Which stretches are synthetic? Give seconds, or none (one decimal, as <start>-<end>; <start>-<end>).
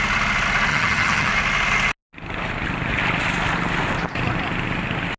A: 0.7-1.3